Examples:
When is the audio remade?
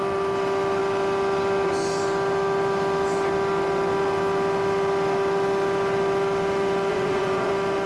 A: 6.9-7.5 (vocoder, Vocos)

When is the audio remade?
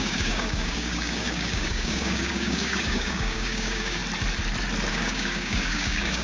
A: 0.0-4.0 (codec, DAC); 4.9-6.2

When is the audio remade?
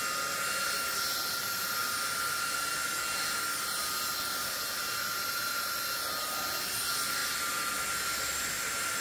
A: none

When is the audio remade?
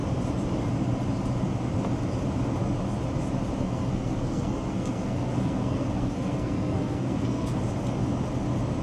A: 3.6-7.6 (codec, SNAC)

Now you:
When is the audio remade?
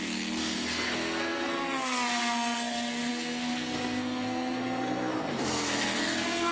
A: 0.0-6.5 (codec, SNAC)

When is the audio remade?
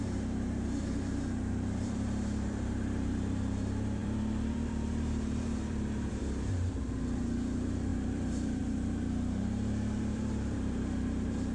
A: 0.0-11.5 (vocoder, BigVGAN v2)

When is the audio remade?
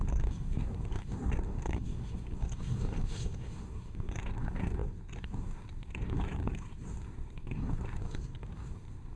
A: 0.0-9.2 (codec, SNAC)